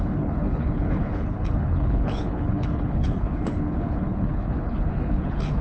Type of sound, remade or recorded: remade